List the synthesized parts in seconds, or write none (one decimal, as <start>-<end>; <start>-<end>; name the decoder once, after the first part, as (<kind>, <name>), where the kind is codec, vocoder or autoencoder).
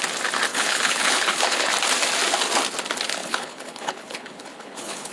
0.5-1.7 (codec, HILCodec); 3.2-5.1